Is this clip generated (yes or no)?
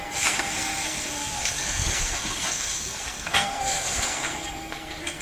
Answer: yes